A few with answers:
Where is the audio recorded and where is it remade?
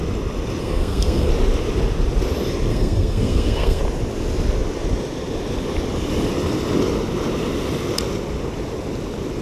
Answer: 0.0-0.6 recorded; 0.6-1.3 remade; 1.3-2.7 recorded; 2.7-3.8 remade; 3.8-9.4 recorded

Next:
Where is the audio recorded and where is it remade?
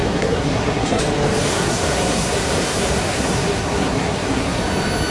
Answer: 0.0-1.0 remade; 1.0-1.5 recorded; 1.5-4.6 remade; 4.6-5.1 recorded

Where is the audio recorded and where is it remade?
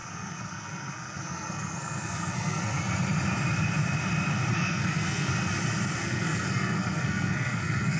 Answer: 0.0-2.8 remade; 2.8-4.5 recorded; 4.5-5.3 remade; 5.3-6.0 recorded; 6.0-8.0 remade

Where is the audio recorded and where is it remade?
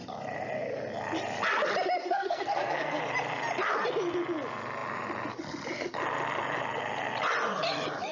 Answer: 0.0-2.0 recorded; 2.0-3.0 remade; 3.0-8.1 recorded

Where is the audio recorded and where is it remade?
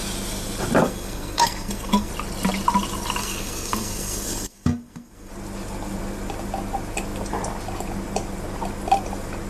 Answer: 0.0-0.8 recorded; 0.8-2.1 remade; 2.1-3.2 recorded; 3.2-5.3 remade; 5.3-9.5 recorded